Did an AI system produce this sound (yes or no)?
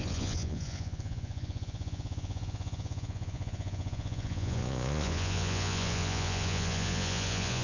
yes